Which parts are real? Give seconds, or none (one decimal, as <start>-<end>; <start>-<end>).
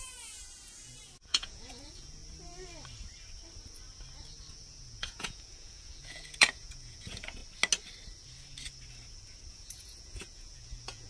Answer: 2.2-4.5; 7.4-9.5